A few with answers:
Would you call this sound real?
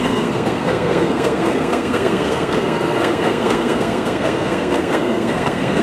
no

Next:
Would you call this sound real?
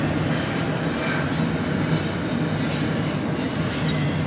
yes